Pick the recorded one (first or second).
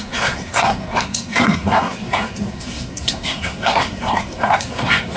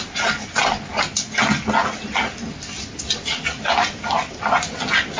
second